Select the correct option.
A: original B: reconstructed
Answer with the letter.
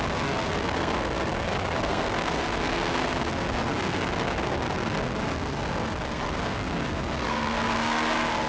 B